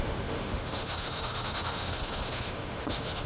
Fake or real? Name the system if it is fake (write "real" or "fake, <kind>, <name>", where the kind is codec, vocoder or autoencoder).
fake, autoencoder, DAC-VAE